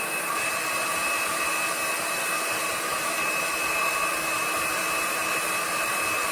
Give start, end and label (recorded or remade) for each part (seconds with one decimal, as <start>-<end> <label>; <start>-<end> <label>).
0.0-6.3 recorded